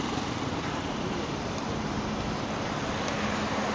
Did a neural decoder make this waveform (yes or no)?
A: no